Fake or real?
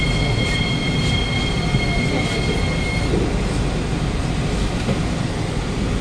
real